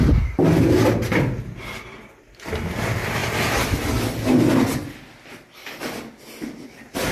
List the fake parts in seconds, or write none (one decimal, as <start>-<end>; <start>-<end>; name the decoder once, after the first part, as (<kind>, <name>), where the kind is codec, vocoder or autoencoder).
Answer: none